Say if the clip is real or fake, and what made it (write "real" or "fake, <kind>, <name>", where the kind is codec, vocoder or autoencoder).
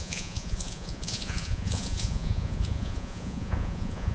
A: fake, vocoder, Vocos